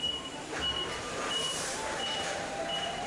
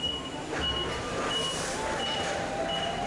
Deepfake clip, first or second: first